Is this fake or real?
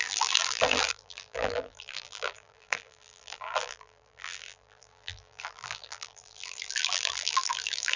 fake